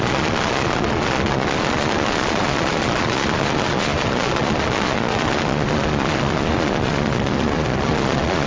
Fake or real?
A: fake